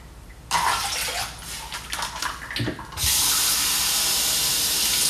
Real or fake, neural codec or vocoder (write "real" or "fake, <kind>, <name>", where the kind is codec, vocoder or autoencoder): real